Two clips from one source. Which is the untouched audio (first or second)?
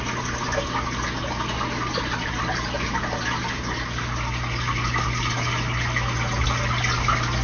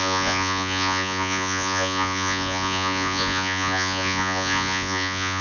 first